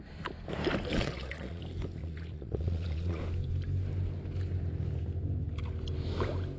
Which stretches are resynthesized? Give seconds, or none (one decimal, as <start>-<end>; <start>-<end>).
0.9-1.6; 2.0-3.2

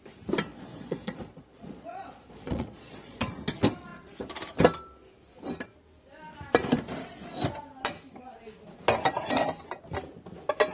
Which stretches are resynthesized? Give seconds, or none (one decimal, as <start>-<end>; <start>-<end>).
0.5-3.3

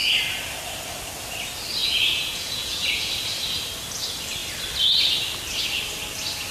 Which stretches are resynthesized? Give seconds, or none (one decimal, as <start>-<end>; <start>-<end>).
1.8-3.1

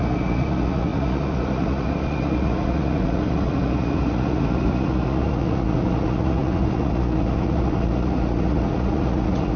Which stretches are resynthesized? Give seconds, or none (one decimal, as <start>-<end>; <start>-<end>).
0.0-9.6

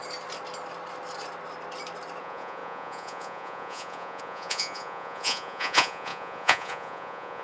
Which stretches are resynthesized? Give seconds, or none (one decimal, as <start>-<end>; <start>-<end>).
2.2-7.4

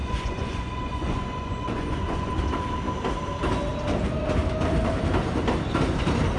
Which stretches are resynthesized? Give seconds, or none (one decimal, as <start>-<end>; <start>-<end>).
0.0-2.3

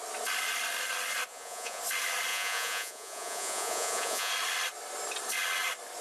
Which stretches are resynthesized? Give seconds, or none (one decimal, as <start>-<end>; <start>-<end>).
1.3-1.8; 2.3-4.3